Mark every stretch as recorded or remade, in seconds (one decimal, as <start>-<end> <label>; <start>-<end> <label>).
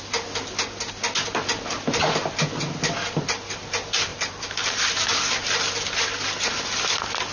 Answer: 0.0-4.1 recorded; 4.1-5.0 remade; 5.0-7.3 recorded